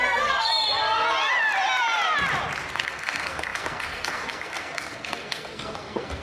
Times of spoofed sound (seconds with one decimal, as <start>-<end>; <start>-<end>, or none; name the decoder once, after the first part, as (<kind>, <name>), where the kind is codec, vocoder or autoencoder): 0.0-0.5 (codec, SNAC); 2.7-6.2